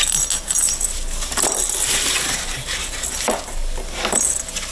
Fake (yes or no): no